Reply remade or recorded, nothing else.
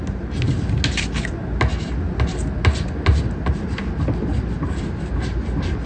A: recorded